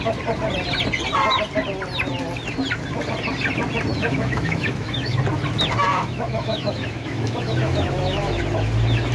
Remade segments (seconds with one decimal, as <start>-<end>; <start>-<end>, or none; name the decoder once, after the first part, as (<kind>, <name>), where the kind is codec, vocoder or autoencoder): 3.9-5.2 (autoencoder, DAC-VAE); 5.9-8.4